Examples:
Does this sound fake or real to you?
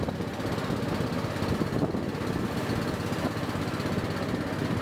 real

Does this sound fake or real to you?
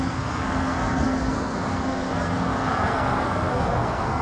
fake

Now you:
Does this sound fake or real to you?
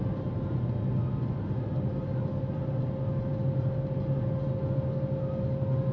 real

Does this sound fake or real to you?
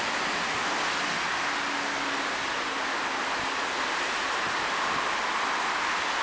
real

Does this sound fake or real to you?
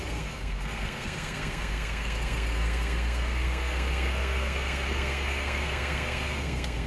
fake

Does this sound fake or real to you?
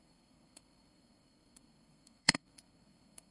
fake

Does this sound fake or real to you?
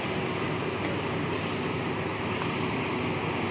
real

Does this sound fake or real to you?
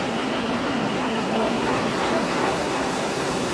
fake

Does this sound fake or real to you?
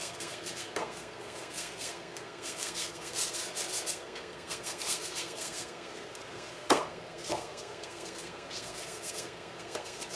fake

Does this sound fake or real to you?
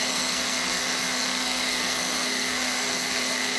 fake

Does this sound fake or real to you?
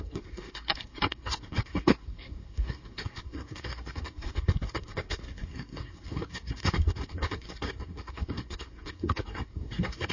fake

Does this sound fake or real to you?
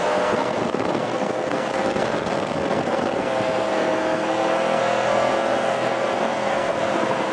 fake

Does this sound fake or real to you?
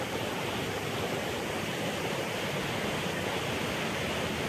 real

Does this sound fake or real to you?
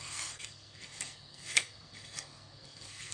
fake